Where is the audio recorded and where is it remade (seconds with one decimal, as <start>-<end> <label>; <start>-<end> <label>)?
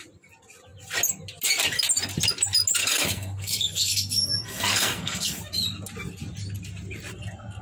0.0-2.8 recorded; 2.8-5.4 remade; 5.4-7.6 recorded